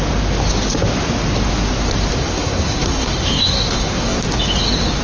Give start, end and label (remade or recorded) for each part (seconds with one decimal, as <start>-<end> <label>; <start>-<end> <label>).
0.0-2.2 recorded; 2.2-4.2 remade; 4.2-5.0 recorded